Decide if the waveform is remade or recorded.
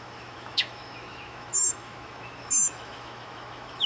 remade